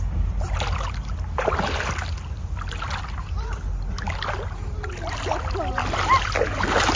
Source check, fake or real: real